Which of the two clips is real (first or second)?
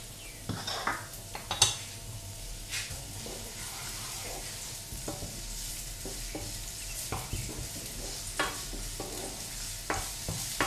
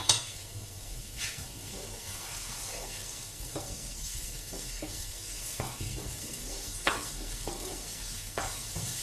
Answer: first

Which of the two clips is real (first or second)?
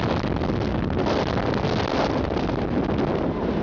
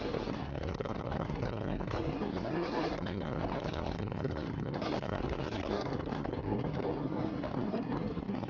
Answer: first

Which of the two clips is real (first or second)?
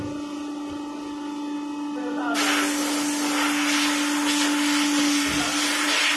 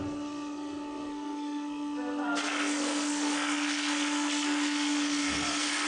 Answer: first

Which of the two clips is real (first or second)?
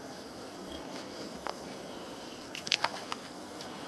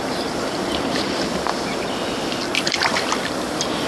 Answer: second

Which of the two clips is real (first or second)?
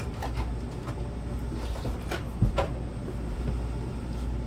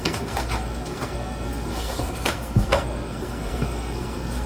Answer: first